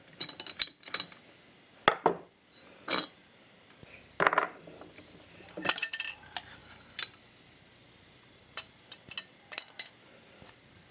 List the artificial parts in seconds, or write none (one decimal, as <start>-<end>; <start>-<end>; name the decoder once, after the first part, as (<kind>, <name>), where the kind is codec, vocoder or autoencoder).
none